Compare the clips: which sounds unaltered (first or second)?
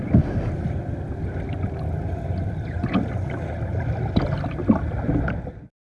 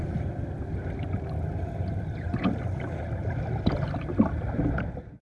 first